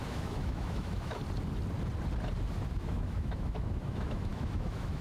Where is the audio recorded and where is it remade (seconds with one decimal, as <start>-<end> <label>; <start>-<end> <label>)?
0.0-1.2 remade; 1.2-2.7 recorded; 2.7-5.0 remade